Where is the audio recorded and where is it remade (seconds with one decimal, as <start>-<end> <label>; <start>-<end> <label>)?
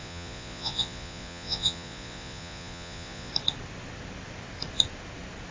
0.0-3.3 remade; 3.3-5.5 recorded